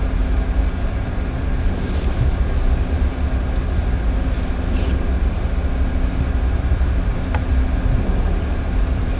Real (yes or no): yes